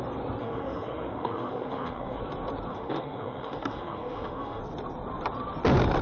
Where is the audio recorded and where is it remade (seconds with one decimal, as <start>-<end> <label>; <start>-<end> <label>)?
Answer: 0.0-0.4 recorded; 0.4-2.2 remade; 2.2-2.7 recorded; 2.7-4.6 remade; 4.6-6.0 recorded